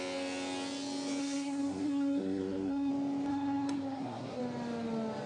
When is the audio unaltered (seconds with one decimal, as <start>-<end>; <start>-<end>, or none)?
0.0-1.2; 2.9-3.3; 4.4-5.3